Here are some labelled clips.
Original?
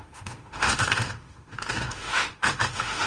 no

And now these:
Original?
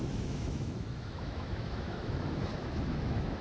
no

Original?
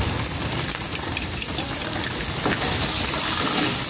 yes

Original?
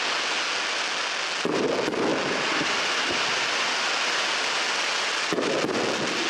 yes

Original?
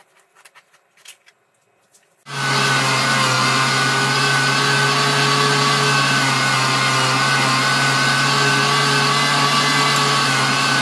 yes